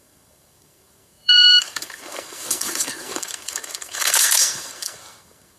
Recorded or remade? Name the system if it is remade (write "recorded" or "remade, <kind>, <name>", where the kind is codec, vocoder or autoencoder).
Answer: remade, codec, SNAC